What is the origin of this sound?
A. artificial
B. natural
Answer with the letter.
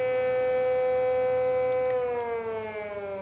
B